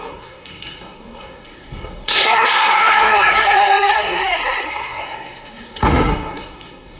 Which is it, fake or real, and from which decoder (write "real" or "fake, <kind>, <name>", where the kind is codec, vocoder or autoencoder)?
fake, codec, SNAC